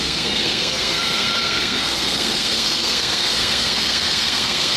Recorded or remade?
remade